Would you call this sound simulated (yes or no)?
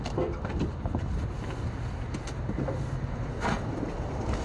no